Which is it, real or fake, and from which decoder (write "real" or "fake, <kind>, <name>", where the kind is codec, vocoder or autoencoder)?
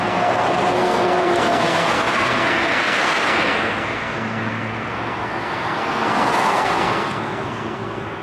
fake, codec, SNAC